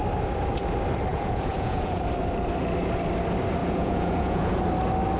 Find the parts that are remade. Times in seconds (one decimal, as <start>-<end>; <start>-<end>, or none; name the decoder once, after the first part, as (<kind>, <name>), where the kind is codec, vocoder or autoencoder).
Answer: 1.1-2.0 (vocoder, Vocos); 3.6-4.6